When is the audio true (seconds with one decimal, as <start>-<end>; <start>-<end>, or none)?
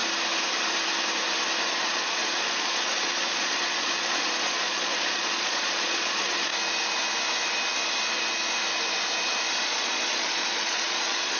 0.0-1.7; 6.5-9.6